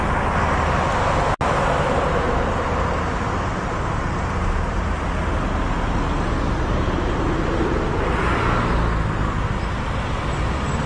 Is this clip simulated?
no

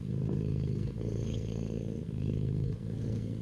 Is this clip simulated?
yes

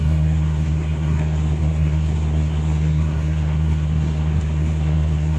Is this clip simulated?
yes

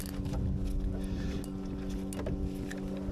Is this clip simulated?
no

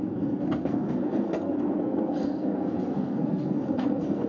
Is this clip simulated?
yes